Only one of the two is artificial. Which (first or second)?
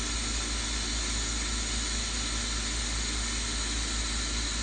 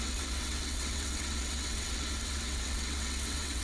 second